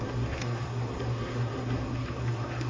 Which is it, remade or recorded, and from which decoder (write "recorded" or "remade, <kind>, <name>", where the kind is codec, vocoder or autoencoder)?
remade, codec, SNAC